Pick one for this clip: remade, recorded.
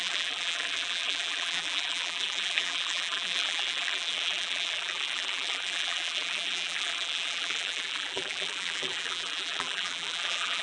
remade